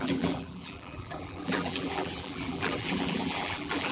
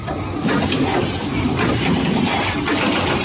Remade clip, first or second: first